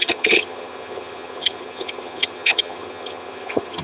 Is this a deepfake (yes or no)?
yes